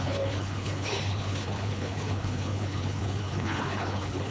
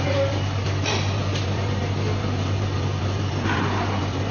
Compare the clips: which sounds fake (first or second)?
first